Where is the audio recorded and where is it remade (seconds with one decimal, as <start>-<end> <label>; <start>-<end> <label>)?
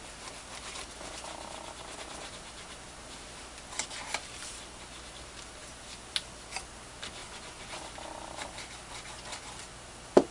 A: 0.0-7.2 recorded; 7.2-7.8 remade; 7.8-10.3 recorded